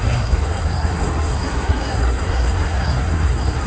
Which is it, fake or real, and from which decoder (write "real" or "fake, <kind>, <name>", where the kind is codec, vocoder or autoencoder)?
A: fake, codec, SNAC